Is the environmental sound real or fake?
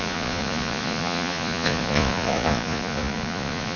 fake